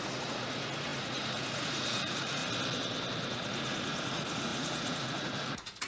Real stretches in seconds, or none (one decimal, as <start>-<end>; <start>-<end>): 2.4-3.2